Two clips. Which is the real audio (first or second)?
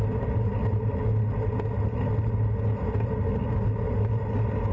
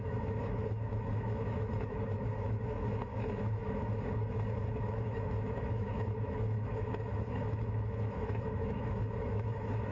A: first